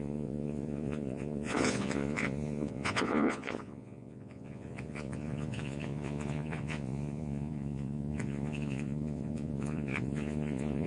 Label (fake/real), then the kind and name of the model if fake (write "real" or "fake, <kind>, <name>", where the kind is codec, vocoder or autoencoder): fake, vocoder, Vocos